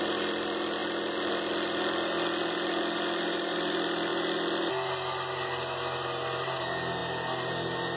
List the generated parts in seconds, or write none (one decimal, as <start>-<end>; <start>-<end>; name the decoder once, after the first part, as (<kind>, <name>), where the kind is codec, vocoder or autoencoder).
none